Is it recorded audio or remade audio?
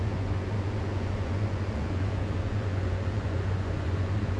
remade